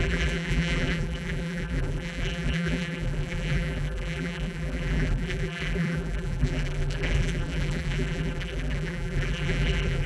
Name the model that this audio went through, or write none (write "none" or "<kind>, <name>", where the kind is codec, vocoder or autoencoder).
vocoder, BigVGAN v2